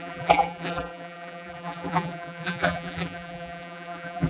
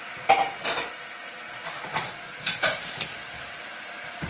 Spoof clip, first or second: first